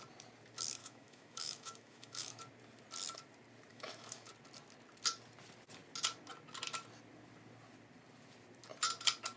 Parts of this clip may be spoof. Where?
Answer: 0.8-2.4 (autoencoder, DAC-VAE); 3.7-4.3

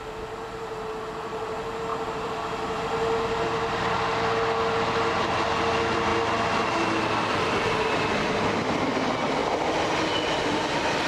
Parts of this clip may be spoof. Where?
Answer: 1.9-2.8 (vocoder, BigVGAN v2)

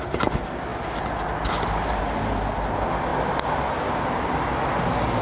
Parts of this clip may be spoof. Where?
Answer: none